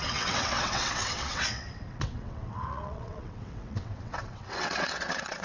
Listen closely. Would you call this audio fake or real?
fake